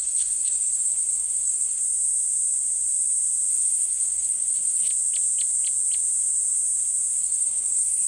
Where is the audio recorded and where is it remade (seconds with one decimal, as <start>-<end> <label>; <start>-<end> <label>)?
0.0-1.8 remade; 1.8-3.5 recorded; 3.5-4.9 remade; 4.9-7.2 recorded; 7.2-8.1 remade